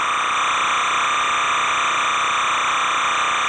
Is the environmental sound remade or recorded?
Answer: recorded